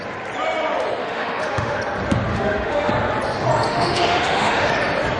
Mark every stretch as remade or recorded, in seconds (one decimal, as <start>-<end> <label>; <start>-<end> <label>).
0.0-1.0 recorded; 1.0-1.8 remade; 1.8-2.3 recorded; 2.3-2.9 remade; 2.9-3.7 recorded; 3.7-4.7 remade; 4.7-5.2 recorded